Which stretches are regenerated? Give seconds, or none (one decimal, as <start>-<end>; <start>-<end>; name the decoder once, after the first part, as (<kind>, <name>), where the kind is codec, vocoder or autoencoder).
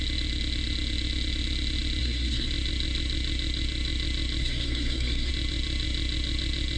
2.0-2.5 (codec, SNAC); 4.4-5.3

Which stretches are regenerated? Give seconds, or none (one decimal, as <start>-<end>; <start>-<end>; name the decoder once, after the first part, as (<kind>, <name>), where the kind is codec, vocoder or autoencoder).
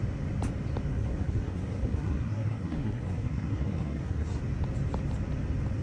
0.9-4.4 (codec, SNAC)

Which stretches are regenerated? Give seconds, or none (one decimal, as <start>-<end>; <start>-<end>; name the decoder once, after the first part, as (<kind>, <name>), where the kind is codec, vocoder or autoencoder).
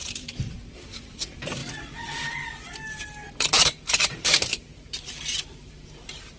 0.0-1.6 (vocoder, BigVGAN v2); 3.3-6.4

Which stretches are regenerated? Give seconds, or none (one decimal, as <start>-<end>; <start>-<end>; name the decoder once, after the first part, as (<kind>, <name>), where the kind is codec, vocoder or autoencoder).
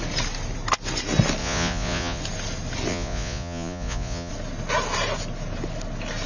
1.4-2.2 (vocoder, Vocos); 2.9-4.3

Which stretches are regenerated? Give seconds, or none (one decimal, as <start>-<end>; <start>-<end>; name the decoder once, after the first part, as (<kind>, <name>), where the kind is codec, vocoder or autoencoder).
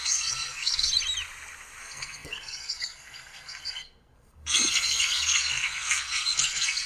0.0-0.9 (codec, SNAC); 1.8-6.9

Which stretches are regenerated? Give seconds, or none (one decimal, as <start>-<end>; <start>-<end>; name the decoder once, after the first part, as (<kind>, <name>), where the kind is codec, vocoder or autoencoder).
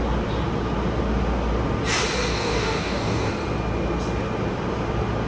2.3-3.3 (codec, DAC)